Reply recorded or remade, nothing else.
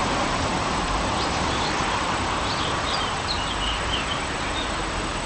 remade